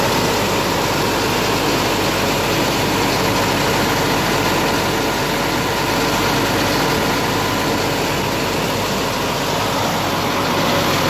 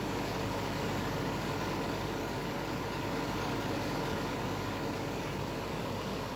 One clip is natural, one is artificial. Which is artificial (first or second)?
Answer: second